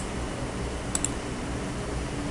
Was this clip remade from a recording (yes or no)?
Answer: no